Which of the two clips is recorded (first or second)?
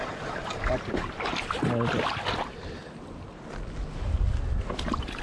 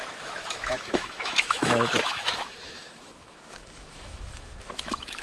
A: first